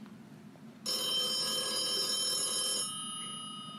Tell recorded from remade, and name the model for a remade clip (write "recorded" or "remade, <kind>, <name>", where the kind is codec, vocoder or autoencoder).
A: recorded